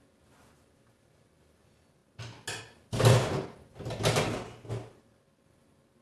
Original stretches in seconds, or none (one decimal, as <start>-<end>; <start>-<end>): 2.0-2.6